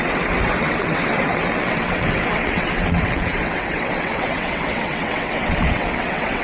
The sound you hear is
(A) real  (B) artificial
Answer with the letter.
B